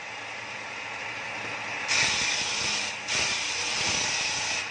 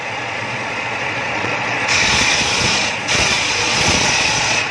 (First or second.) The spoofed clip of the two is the second